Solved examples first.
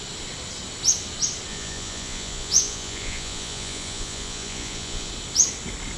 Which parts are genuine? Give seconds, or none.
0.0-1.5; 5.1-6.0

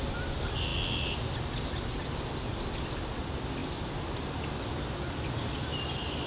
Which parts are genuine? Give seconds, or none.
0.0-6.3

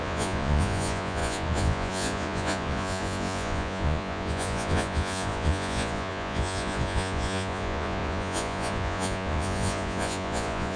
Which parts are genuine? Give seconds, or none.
none